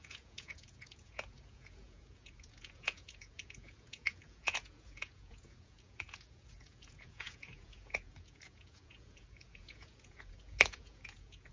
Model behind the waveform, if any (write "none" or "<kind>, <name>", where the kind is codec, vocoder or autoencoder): vocoder, Vocos